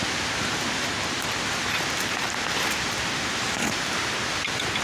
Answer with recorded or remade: recorded